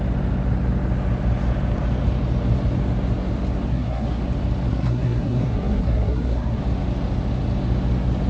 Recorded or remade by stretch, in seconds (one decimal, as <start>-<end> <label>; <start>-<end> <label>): 0.0-3.7 recorded; 3.7-4.2 remade; 4.2-4.7 recorded; 4.7-6.6 remade; 6.6-8.3 recorded

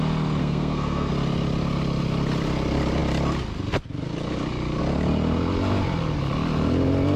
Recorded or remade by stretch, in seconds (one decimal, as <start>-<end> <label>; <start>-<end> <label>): 0.0-0.4 recorded; 0.4-1.1 remade; 1.1-7.2 recorded

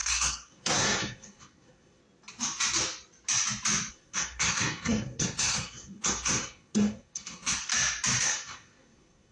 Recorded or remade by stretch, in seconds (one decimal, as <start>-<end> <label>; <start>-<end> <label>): 0.0-2.0 remade; 2.0-3.9 recorded; 3.9-7.7 remade; 7.7-8.2 recorded; 8.2-9.3 remade

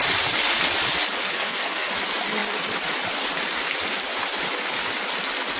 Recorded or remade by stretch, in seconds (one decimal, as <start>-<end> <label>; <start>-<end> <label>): 0.0-1.2 recorded; 1.2-1.9 remade; 1.9-5.6 recorded

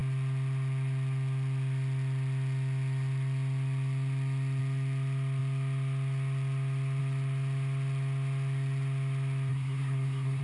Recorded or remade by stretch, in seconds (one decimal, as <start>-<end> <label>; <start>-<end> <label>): 0.0-9.5 recorded; 9.5-10.4 remade